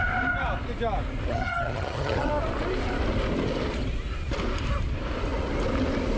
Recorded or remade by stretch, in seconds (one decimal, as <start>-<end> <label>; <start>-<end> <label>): 0.0-1.3 recorded; 1.3-2.3 remade; 2.3-6.2 recorded